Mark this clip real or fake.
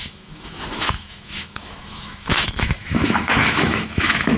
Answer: fake